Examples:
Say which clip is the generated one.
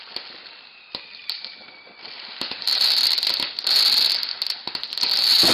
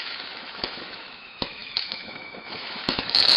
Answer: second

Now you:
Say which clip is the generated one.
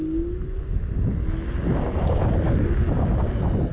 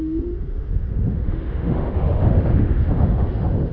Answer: second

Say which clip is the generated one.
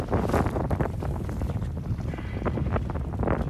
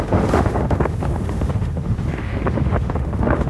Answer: second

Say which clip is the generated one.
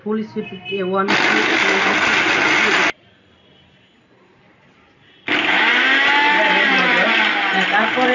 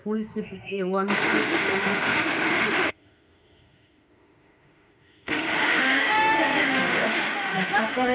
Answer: second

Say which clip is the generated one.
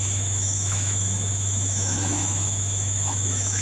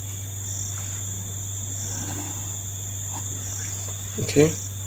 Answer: first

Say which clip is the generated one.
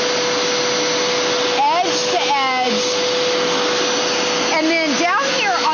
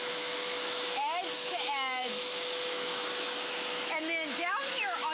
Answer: second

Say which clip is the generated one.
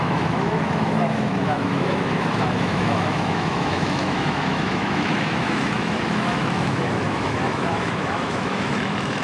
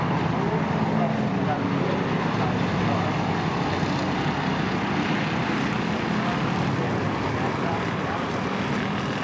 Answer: first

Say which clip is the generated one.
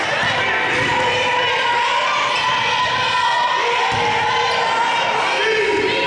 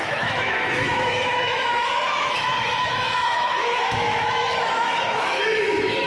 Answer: second